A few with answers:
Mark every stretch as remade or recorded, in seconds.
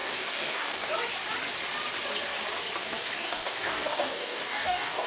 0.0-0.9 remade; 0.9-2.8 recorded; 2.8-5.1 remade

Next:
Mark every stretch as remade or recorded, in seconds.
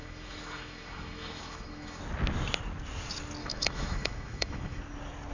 0.0-2.0 remade; 2.0-3.4 recorded; 3.4-4.8 remade; 4.8-5.3 recorded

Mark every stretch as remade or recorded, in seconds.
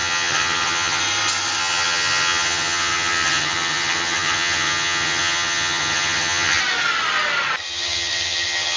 0.0-1.0 remade; 1.0-1.6 recorded; 1.6-6.6 remade; 6.6-7.6 recorded; 7.6-8.8 remade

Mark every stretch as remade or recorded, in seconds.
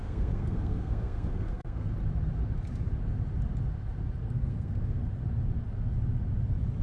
0.0-1.9 remade; 1.9-4.2 recorded; 4.2-5.0 remade; 5.0-6.8 recorded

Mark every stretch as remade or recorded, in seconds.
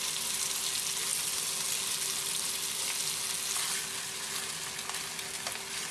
0.0-5.9 recorded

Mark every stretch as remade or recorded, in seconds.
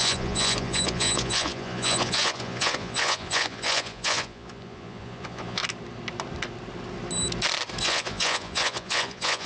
0.0-5.6 remade; 5.6-7.8 recorded; 7.8-9.5 remade